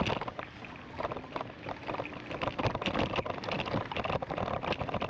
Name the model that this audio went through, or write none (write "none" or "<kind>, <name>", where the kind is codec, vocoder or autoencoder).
none